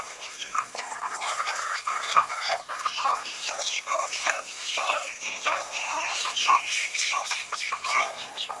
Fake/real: fake